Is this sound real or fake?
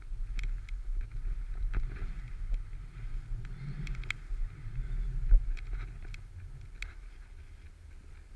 real